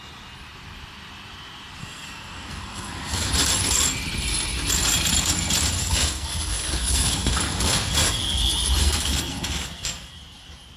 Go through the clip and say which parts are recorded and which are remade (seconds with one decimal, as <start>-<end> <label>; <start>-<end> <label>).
0.0-1.8 recorded; 1.8-3.3 remade; 3.3-5.8 recorded; 5.8-8.4 remade; 8.4-8.8 recorded; 8.8-10.1 remade; 10.1-10.8 recorded